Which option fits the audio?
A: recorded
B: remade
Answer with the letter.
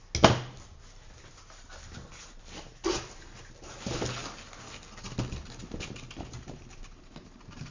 A